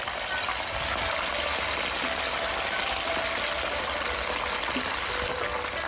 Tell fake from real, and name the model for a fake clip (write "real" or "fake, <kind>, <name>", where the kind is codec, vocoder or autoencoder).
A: real